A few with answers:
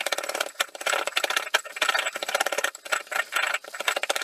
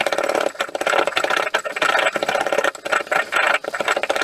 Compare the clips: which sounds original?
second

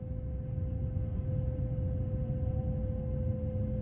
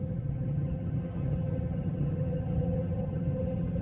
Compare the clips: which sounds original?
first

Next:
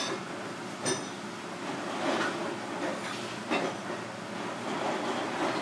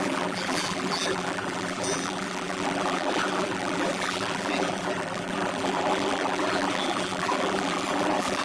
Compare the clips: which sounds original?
first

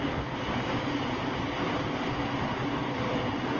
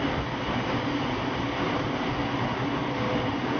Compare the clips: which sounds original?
second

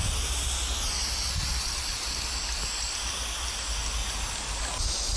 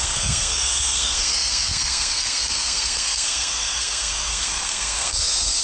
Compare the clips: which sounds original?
first